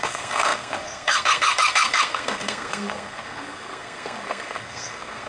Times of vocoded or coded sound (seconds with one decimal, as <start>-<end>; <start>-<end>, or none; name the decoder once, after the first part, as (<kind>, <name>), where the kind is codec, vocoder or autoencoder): 0.0-5.3 (codec, SNAC)